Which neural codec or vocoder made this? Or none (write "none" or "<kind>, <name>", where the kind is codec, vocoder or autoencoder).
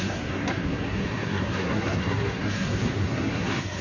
codec, SNAC